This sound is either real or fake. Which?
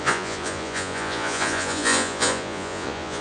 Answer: fake